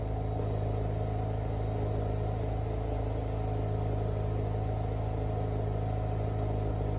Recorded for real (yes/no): yes